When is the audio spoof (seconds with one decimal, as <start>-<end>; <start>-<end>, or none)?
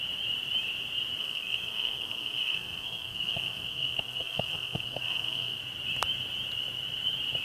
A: 1.2-5.6